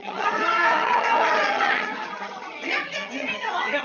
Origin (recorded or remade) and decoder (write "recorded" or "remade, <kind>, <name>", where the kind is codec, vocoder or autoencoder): remade, vocoder, HiFi-GAN